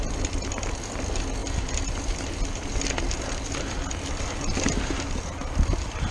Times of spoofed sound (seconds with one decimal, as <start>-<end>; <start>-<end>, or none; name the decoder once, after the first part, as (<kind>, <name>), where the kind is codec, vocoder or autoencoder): none